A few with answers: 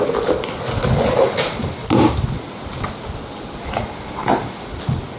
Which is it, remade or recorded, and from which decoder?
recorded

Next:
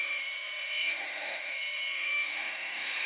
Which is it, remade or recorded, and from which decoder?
remade, autoencoder, DAC-VAE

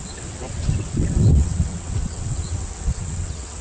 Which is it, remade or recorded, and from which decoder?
remade, vocoder, WaveNeXt